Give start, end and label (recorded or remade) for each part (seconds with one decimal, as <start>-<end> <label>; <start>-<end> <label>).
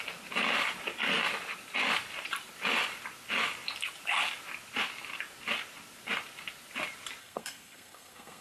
0.0-7.2 recorded; 7.2-8.4 remade